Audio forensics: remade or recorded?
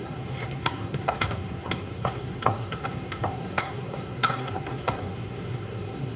remade